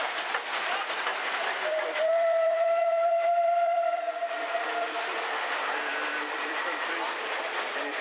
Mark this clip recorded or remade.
remade